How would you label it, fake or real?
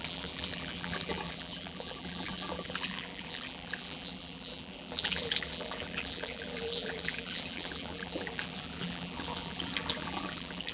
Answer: fake